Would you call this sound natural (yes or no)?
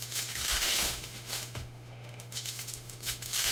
no